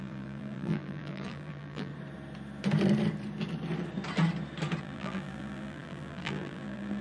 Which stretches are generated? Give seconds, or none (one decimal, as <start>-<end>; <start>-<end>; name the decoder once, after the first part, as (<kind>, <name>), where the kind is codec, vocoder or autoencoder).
0.0-1.9 (vocoder, BigVGAN v2); 4.8-7.0